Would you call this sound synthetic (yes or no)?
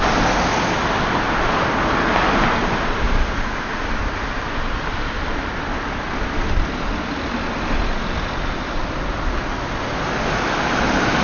no